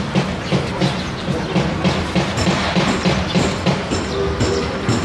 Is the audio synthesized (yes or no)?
no